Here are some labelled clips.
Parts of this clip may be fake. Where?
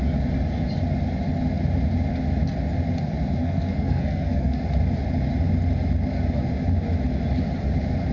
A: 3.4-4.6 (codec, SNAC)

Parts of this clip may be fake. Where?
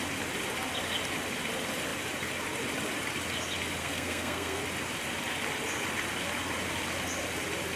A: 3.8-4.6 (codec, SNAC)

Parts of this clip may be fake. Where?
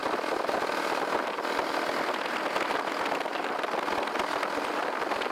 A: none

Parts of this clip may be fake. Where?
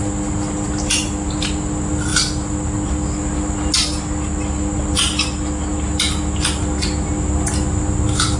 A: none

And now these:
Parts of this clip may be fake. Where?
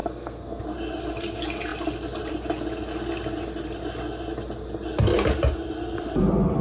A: 0.0-0.6 (codec, SNAC)